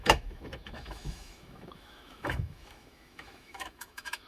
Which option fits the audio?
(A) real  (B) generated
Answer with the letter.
B